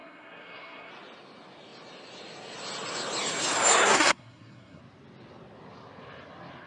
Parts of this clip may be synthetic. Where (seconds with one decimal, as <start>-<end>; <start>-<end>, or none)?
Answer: 0.0-0.9; 3.7-4.8